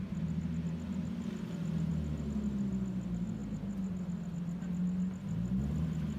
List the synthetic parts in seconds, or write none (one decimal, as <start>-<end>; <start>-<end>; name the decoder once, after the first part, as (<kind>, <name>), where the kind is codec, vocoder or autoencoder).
none